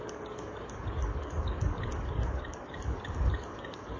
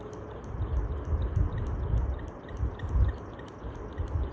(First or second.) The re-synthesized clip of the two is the first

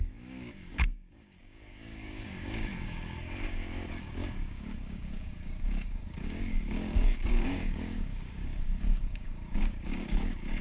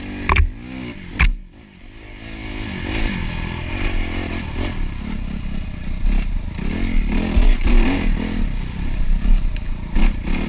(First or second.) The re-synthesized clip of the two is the first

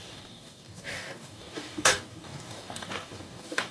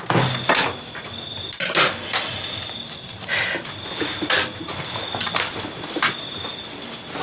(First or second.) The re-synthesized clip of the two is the first